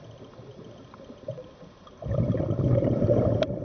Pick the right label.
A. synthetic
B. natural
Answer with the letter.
B